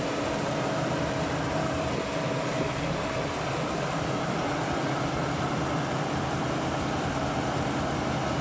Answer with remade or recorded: recorded